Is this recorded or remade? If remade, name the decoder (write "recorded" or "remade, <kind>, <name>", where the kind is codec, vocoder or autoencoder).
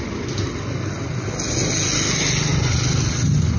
recorded